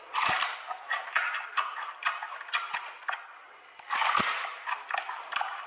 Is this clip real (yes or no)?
yes